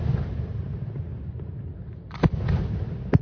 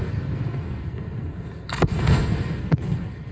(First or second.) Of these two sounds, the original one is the first